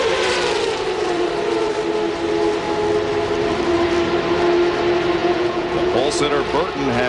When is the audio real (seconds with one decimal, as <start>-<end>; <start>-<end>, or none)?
0.0-5.2; 6.0-7.1